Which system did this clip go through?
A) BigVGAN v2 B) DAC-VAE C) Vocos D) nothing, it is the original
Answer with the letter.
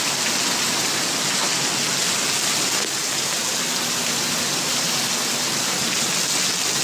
D